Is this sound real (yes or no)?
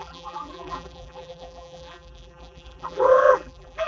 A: no